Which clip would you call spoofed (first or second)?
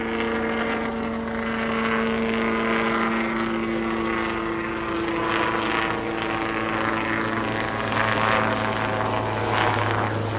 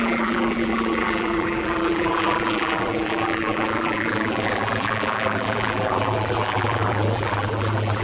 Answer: second